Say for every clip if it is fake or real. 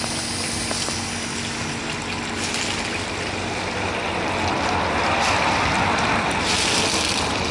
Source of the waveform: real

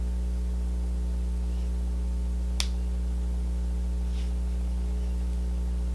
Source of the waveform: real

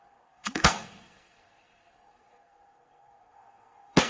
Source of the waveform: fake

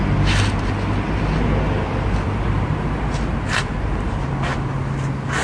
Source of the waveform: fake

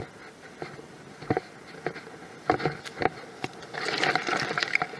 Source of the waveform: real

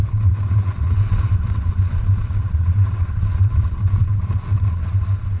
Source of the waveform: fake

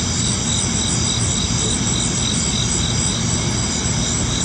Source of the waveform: real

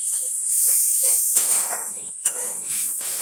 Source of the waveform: fake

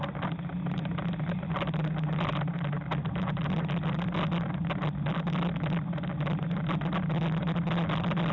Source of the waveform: real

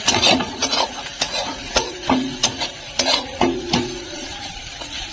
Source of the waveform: fake